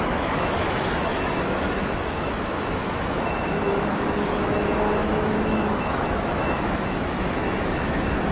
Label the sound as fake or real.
fake